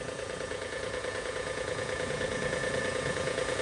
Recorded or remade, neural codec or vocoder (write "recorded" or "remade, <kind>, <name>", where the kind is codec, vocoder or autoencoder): remade, vocoder, Vocos